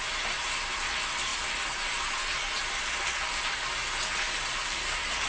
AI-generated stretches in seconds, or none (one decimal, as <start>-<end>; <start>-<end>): 0.0-1.3; 4.4-5.3